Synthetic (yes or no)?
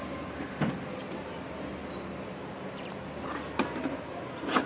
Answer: no